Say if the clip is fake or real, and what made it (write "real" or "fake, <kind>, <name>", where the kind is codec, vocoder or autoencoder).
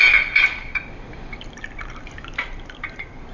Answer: fake, vocoder, BigVGAN v2